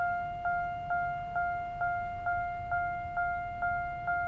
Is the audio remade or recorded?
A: recorded